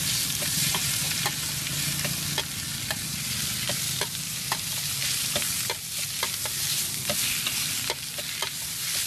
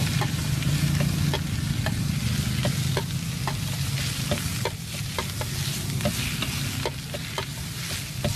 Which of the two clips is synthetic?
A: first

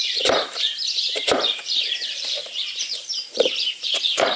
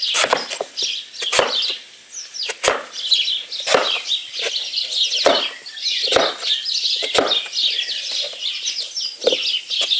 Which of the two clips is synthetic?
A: first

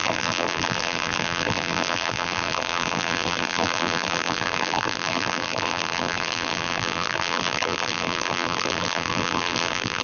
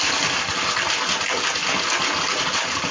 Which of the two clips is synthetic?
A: first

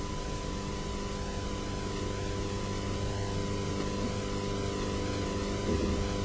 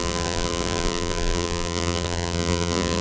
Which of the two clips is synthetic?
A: second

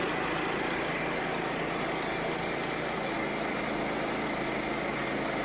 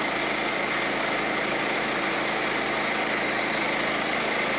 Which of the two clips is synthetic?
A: second